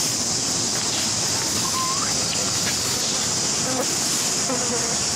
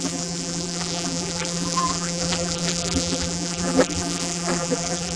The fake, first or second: second